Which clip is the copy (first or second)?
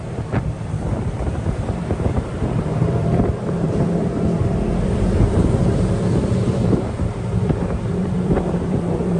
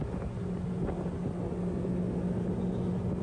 first